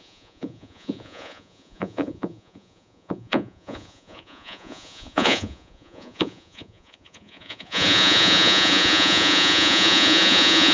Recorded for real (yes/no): no